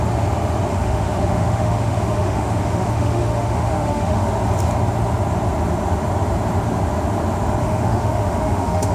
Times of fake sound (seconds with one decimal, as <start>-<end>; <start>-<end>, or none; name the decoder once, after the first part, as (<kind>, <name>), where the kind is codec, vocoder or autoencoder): 0.7-4.3 (autoencoder, DAC-VAE); 7.6-8.9